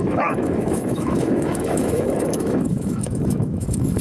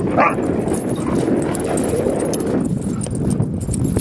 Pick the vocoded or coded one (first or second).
first